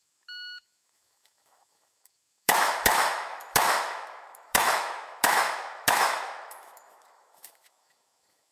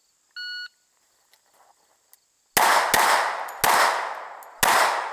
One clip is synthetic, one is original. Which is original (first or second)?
second